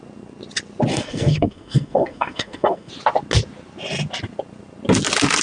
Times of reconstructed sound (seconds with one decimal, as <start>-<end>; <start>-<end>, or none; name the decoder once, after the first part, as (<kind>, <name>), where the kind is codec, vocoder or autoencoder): 0.9-2.9 (codec, SNAC)

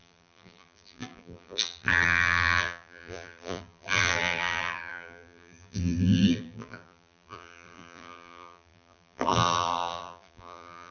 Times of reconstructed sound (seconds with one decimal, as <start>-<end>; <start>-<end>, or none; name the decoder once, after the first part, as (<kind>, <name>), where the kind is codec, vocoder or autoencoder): 0.0-10.9 (vocoder, BigVGAN v2)